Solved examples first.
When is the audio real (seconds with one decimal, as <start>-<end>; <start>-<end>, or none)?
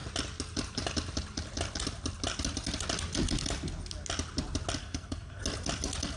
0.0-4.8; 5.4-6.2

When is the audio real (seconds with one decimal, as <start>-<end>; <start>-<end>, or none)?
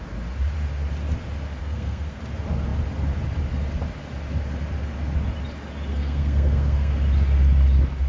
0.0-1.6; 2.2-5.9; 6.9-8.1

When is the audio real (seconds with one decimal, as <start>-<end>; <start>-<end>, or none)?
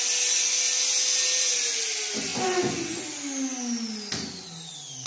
0.0-2.3; 3.0-5.1